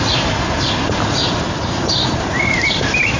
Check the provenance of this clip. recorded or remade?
remade